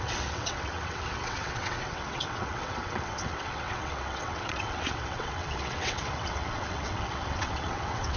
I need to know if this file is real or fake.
fake